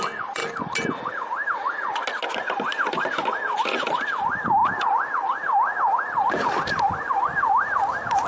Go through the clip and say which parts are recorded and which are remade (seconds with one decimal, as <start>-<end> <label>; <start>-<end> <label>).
0.0-8.3 recorded